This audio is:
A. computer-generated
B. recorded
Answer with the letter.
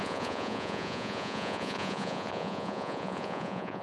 A